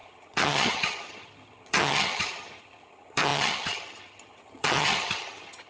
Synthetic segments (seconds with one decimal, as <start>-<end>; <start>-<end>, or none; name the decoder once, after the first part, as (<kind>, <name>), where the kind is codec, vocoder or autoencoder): 0.0-5.7 (vocoder, HiFi-GAN)